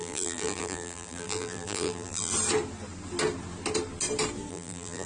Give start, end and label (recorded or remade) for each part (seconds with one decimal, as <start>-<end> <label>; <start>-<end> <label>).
0.0-2.3 remade; 2.3-4.5 recorded; 4.5-5.1 remade